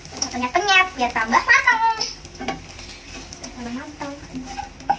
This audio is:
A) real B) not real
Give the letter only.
A